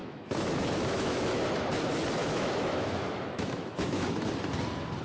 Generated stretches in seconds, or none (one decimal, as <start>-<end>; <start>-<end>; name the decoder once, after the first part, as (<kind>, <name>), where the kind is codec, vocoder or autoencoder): 0.0-1.4 (autoencoder, DAC-VAE); 2.2-4.3